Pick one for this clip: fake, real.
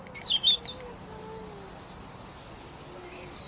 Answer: real